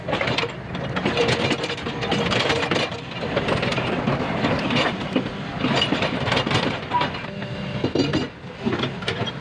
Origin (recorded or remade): recorded